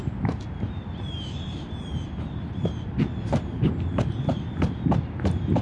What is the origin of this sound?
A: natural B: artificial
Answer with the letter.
A